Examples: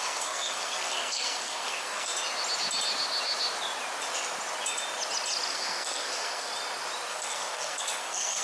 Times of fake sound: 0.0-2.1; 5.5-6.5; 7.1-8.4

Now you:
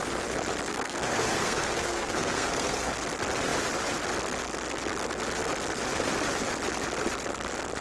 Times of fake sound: 0.7-2.9

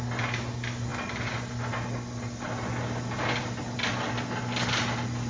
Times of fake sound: none

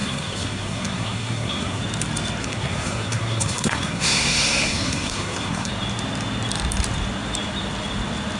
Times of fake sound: 0.0-1.8; 2.4-5.7

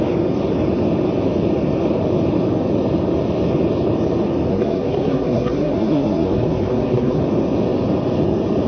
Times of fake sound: 4.5-7.2

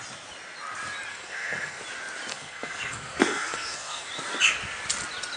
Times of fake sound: 1.1-1.8; 2.3-4.1

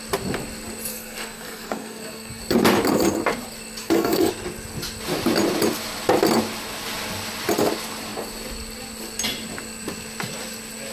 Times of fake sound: 0.9-2.4; 3.8-4.3